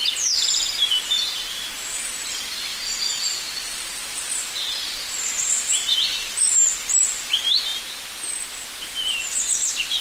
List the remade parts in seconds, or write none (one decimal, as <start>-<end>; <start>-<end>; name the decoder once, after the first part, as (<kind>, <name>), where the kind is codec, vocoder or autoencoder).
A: 2.7-3.5 (vocoder, BigVGAN v2); 4.0-7.3; 7.7-8.7